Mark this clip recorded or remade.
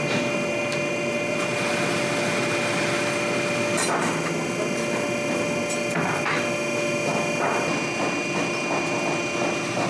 recorded